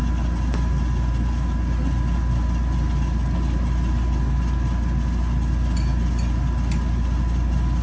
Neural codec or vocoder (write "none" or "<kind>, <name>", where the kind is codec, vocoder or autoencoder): none